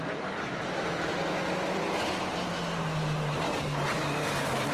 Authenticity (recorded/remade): recorded